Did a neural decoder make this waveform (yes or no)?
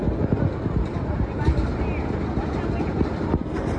yes